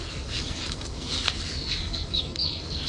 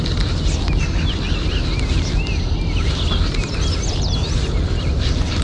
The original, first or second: second